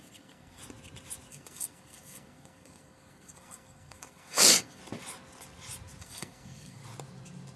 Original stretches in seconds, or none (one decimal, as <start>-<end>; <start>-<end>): 0.6-1.3; 4.8-6.0; 6.8-7.6